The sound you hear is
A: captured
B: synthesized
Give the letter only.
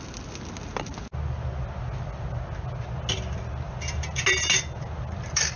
A